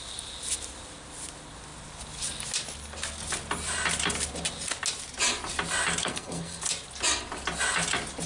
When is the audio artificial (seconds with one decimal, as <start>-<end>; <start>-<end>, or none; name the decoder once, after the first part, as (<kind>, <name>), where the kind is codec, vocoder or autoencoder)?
6.0-6.6 (codec, SNAC)

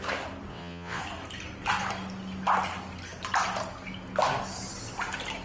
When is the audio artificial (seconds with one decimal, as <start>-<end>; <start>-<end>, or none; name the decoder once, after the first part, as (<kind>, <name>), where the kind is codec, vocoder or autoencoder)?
0.5-1.0 (vocoder, WaveNeXt)

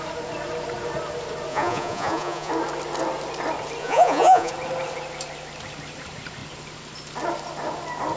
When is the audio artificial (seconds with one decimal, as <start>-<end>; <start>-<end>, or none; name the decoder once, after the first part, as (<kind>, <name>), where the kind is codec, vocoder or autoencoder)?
1.5-2.5 (vocoder, Vocos); 3.8-4.5

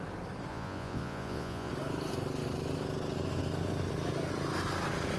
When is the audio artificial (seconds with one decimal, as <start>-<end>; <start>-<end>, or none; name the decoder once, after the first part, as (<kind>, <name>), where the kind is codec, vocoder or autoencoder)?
0.5-1.7 (vocoder, Vocos)

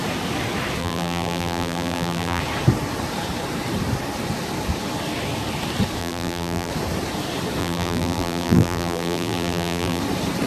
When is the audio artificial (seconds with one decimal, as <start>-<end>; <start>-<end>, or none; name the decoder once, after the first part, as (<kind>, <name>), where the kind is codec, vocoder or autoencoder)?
0.8-2.4 (vocoder, BigVGAN v2); 6.0-6.7; 7.6-10.0

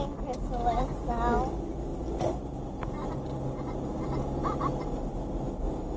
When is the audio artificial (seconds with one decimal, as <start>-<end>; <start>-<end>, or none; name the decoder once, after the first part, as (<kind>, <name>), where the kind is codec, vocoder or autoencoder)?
none